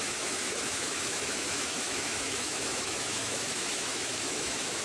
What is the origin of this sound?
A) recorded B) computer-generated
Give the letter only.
B